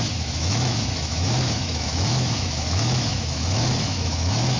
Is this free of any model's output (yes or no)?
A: no